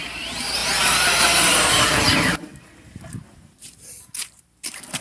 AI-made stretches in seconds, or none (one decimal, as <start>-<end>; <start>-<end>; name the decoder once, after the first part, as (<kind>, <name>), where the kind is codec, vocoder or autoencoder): 0.0-0.6 (vocoder, BigVGAN v2); 1.8-2.5; 4.2-5.0